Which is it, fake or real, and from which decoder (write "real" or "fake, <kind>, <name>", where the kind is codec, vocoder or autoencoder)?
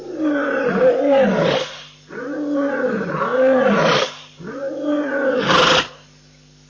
real